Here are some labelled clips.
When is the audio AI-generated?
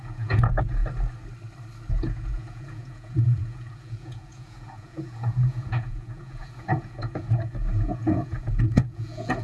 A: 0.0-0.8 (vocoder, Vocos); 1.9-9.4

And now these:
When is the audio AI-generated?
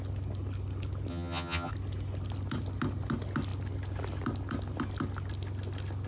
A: 1.1-1.7 (vocoder, HiFi-GAN)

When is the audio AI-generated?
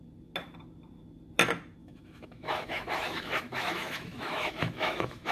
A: 1.8-5.3 (autoencoder, DAC-VAE)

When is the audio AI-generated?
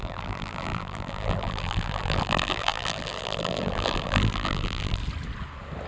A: 0.0-5.0 (vocoder, BigVGAN v2)